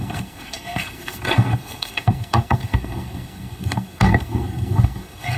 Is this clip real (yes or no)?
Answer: no